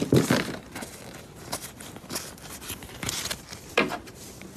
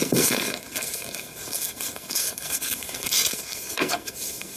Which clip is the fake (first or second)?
second